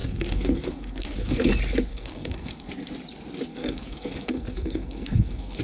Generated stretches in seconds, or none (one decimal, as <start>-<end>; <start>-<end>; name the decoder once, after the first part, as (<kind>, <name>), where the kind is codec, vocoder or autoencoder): 0.0-1.5 (codec, SNAC); 1.9-2.7; 3.5-5.6